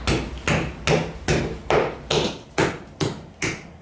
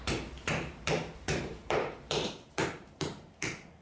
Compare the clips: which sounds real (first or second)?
first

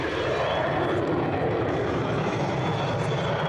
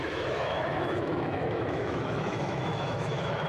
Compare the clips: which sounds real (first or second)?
first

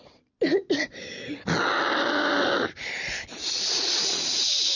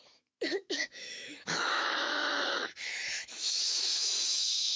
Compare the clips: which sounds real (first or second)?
first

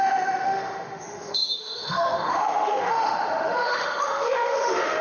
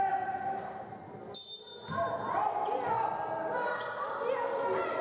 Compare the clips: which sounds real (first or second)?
second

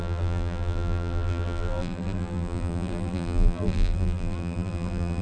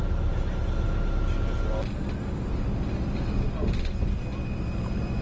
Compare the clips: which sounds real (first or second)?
second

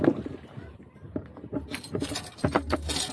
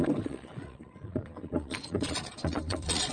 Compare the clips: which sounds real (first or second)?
first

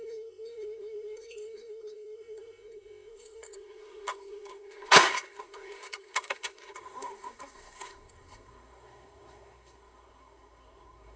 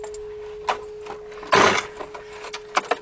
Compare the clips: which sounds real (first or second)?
second